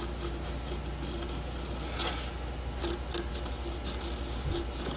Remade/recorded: recorded